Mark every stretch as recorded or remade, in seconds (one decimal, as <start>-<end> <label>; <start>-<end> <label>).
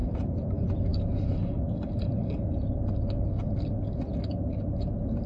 0.0-5.3 recorded